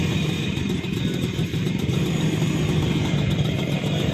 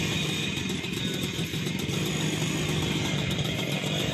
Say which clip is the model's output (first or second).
first